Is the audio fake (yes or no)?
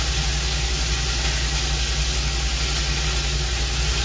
no